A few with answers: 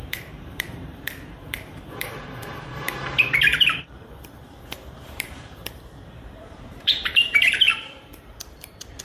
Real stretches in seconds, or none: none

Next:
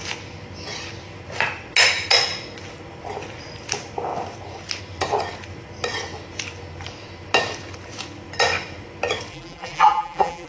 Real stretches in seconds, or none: 0.0-9.3

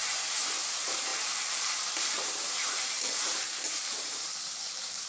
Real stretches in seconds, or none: none

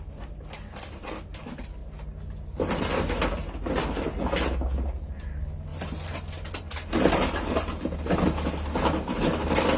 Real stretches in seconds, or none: 0.0-9.8

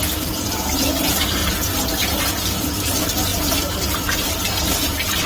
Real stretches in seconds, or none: 1.4-2.2

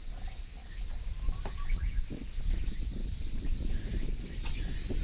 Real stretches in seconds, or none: 0.0-3.0; 4.3-5.0

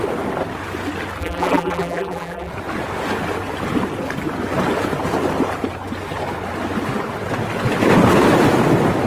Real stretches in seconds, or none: 0.0-1.2; 2.5-9.1

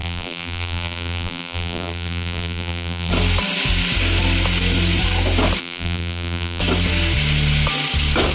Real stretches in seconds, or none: 3.1-5.6; 6.6-8.3